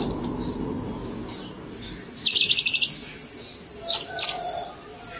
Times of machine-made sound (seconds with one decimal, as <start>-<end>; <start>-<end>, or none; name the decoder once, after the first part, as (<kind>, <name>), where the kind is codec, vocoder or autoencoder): 0.0-1.0 (vocoder, BigVGAN v2); 4.1-5.2